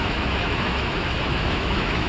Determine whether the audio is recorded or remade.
remade